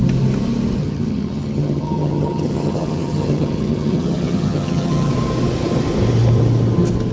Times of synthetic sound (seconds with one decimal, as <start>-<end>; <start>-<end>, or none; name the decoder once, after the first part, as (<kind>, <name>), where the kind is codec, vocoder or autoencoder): 0.8-5.1 (vocoder, HiFi-GAN)